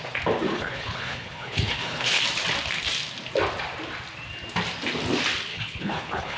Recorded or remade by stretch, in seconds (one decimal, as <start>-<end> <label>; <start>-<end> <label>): 0.0-0.5 recorded; 0.5-2.2 remade; 2.2-5.5 recorded; 5.5-6.4 remade